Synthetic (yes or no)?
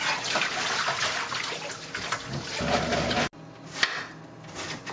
no